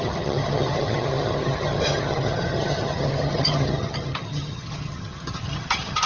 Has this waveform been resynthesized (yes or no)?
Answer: yes